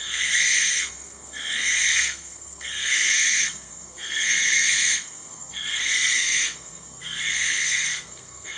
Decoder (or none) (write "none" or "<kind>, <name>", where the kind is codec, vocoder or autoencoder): codec, SNAC